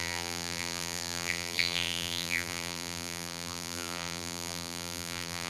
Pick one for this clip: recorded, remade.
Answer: remade